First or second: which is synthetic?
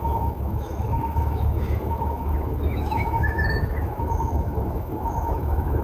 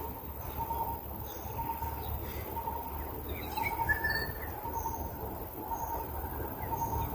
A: first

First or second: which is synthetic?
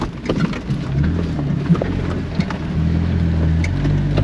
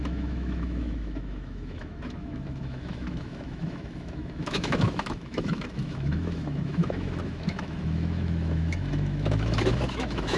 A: second